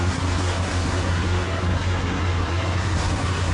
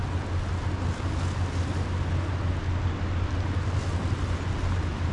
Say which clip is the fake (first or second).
first